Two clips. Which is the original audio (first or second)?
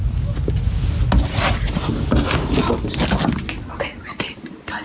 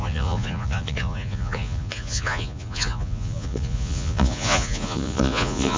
first